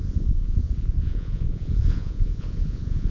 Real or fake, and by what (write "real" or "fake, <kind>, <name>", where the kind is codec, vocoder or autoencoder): fake, vocoder, Vocos